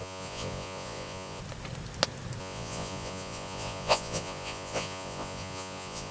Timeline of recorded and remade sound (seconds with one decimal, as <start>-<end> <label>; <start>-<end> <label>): 0.0-1.4 remade; 1.4-2.4 recorded; 2.4-6.1 remade